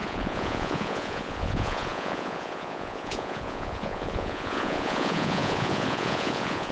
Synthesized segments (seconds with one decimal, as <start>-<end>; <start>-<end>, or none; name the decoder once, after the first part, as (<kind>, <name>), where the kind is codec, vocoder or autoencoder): 0.0-6.7 (vocoder, Vocos)